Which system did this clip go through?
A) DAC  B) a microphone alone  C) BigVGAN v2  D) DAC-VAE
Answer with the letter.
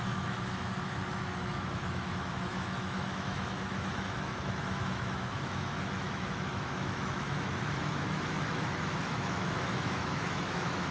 D